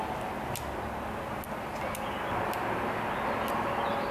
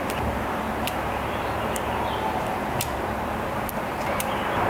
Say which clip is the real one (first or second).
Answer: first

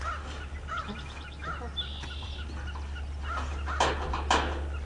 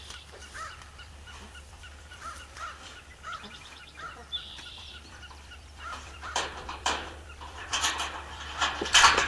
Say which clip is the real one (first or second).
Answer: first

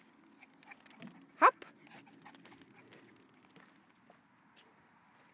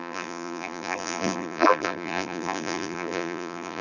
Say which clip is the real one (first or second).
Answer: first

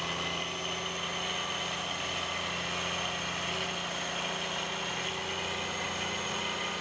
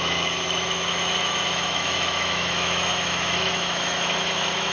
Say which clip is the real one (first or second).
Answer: first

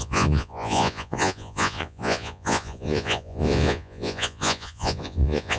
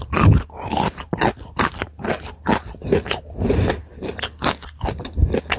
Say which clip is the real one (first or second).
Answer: second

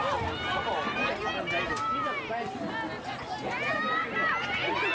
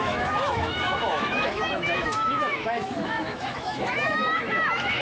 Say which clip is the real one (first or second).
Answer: first